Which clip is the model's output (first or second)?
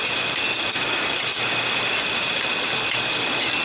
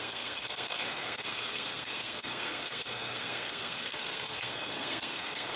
second